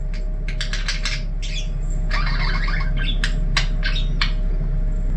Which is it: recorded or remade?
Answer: recorded